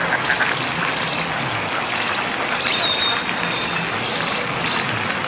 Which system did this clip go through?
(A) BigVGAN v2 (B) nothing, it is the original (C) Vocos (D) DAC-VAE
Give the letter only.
B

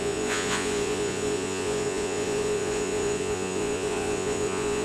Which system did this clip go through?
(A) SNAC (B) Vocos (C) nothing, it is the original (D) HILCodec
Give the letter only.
B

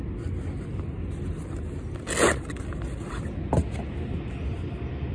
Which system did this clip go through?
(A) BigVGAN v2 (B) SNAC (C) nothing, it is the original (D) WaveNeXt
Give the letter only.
C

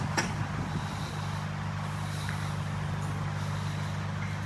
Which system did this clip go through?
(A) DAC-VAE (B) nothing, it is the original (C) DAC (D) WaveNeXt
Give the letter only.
B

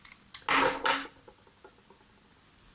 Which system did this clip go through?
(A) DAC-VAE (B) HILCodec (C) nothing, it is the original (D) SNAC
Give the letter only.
C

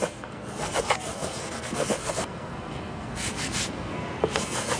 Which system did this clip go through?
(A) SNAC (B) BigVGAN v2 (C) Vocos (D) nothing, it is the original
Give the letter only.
A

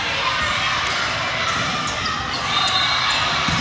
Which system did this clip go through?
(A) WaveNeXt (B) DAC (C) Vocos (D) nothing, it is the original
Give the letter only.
D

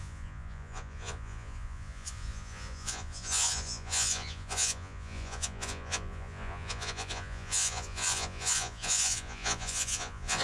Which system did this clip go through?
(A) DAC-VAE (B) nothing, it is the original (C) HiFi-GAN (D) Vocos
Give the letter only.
D